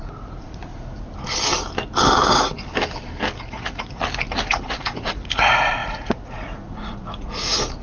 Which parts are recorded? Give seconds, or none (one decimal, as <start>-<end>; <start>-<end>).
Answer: 0.7-2.3; 2.7-3.4; 4.0-4.5